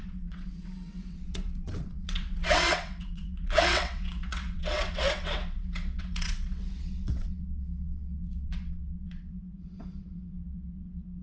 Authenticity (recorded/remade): remade